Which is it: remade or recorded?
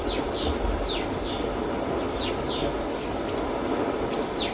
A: recorded